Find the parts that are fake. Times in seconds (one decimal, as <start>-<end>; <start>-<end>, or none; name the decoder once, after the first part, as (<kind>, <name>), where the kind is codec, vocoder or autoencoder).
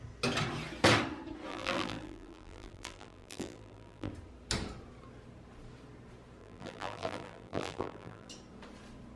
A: 1.5-4.1 (vocoder, BigVGAN v2); 6.4-8.3